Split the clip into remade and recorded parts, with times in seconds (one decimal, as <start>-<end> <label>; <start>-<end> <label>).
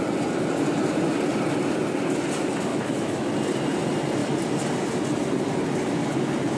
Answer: 0.0-2.7 recorded; 2.7-3.3 remade; 3.3-6.6 recorded